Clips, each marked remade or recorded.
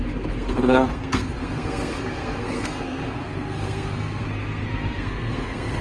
remade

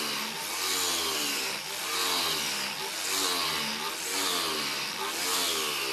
recorded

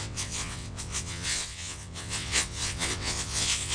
remade